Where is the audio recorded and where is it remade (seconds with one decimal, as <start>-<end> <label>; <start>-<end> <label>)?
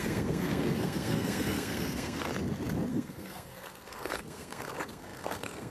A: 0.0-2.3 remade; 2.3-2.9 recorded; 2.9-5.7 remade